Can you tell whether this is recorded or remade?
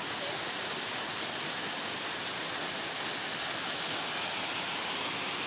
recorded